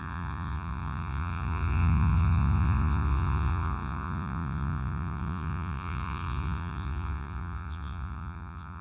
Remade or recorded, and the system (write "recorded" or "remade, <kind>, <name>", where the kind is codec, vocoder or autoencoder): remade, vocoder, Vocos